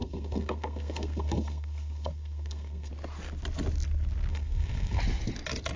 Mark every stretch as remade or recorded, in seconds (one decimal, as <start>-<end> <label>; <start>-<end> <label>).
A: 0.0-2.9 remade; 2.9-4.3 recorded; 4.3-5.0 remade; 5.0-5.8 recorded